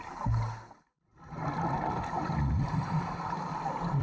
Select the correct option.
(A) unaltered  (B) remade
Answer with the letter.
A